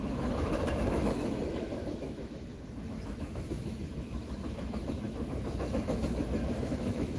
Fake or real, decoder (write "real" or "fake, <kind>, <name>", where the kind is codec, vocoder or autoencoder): fake, autoencoder, DAC-VAE